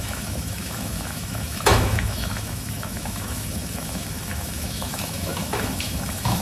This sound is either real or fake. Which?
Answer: fake